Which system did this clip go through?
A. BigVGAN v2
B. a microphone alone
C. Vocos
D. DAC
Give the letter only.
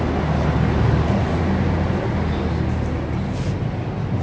B